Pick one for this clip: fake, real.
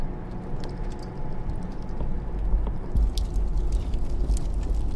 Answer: real